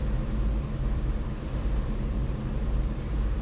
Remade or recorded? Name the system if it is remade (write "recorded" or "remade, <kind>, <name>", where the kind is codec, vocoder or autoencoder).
remade, vocoder, BigVGAN v2